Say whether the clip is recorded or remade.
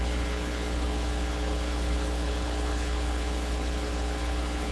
remade